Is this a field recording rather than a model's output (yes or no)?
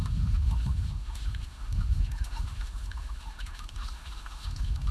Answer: no